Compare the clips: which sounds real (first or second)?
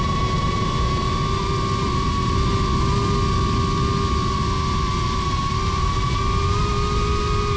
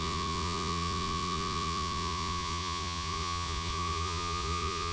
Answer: first